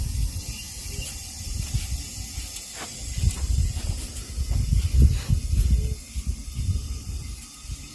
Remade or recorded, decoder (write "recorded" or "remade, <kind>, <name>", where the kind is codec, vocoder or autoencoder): recorded